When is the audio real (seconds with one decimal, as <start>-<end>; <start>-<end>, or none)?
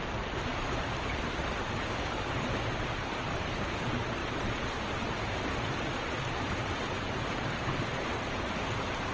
0.0-9.1